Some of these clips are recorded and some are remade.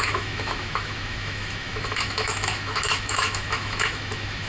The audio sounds remade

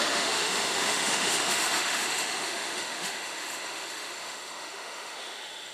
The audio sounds remade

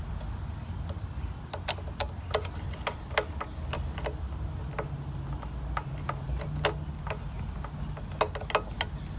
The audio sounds recorded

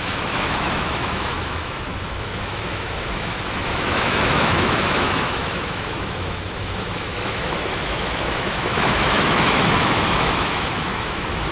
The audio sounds remade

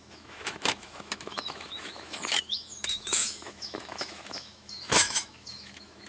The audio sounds remade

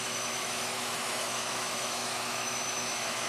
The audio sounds remade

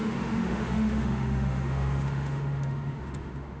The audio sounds remade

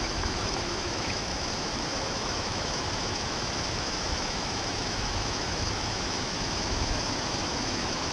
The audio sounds remade